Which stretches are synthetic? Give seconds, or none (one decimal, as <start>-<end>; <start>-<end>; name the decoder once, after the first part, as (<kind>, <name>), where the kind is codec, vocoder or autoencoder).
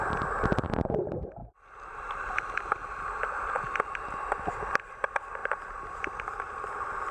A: 1.4-2.0 (vocoder, BigVGAN v2); 5.4-6.2